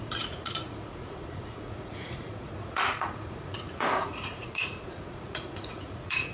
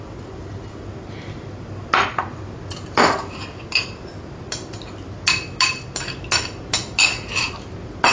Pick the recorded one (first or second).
second